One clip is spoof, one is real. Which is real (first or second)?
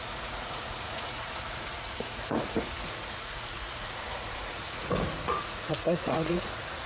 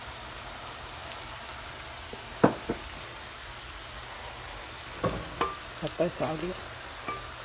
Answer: second